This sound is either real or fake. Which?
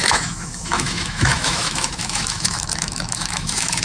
fake